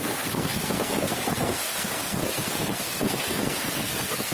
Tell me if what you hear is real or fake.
fake